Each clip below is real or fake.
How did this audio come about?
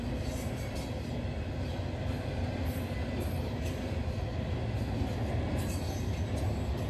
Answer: real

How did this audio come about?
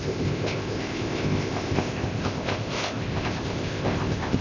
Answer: fake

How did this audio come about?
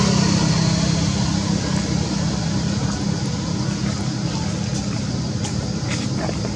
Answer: real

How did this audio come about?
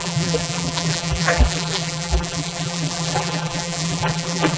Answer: fake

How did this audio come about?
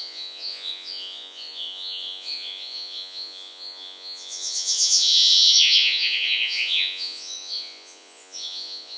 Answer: fake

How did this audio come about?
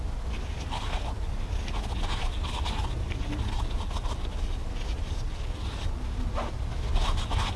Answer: real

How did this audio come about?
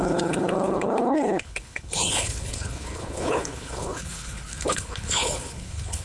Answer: fake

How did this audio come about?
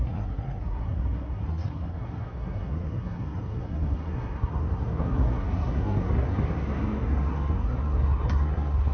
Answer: fake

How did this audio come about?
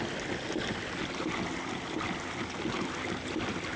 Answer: real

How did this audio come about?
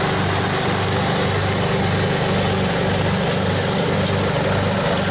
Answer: real